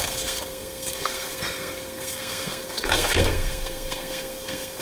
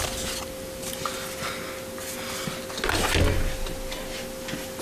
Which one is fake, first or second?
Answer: first